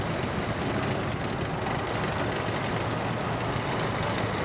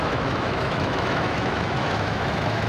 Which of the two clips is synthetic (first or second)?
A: second